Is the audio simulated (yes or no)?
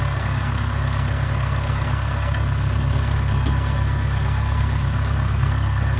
yes